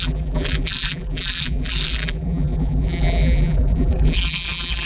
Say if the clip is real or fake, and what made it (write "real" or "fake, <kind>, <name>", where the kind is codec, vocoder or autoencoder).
fake, vocoder, BigVGAN v2